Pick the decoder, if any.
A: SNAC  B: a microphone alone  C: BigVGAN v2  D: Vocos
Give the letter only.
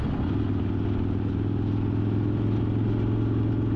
B